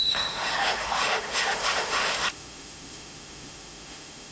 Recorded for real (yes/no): no